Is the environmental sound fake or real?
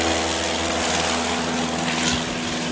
real